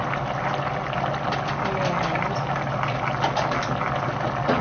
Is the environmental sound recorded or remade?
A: recorded